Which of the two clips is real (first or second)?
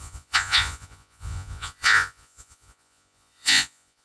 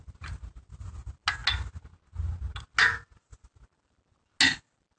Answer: second